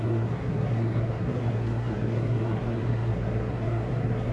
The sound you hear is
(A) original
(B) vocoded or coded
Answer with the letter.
B